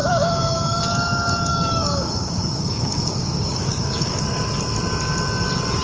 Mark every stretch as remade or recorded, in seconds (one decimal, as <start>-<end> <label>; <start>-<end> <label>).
0.0-0.8 remade; 0.8-1.5 recorded; 1.5-4.2 remade; 4.2-5.8 recorded